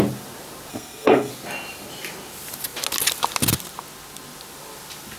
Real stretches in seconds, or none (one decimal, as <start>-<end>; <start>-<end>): 0.0-0.7; 1.3-5.2